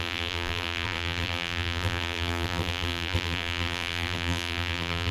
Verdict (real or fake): fake